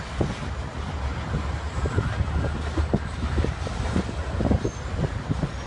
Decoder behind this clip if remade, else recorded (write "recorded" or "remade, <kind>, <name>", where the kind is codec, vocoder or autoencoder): recorded